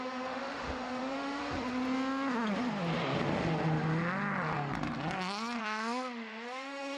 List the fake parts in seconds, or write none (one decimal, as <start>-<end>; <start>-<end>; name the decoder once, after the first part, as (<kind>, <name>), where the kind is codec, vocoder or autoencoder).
0.0-1.4 (autoencoder, DAC-VAE); 5.6-7.0